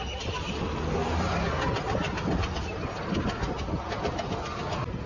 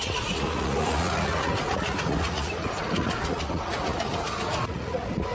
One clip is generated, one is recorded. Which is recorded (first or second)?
first